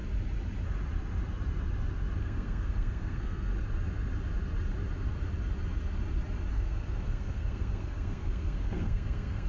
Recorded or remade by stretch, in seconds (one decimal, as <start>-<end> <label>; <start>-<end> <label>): 0.0-2.2 recorded; 2.2-3.5 remade; 3.5-6.5 recorded; 6.5-9.5 remade